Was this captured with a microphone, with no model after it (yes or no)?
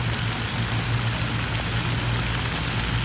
yes